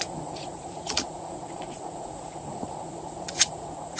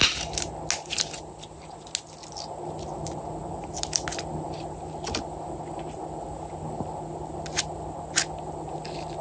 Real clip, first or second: second